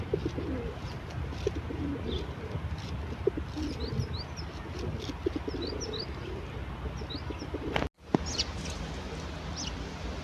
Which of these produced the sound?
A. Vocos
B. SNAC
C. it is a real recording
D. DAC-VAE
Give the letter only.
C